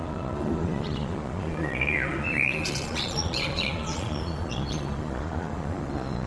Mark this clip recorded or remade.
remade